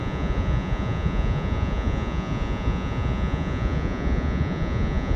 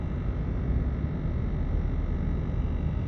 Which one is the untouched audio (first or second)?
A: second